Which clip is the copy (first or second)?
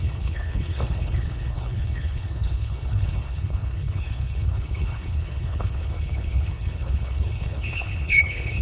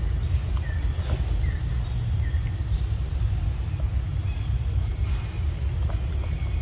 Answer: first